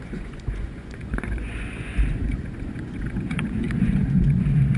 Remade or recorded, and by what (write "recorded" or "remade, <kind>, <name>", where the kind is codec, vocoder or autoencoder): remade, vocoder, Vocos